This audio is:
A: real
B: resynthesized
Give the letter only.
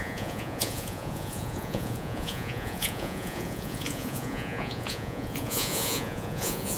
B